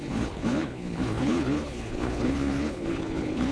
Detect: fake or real fake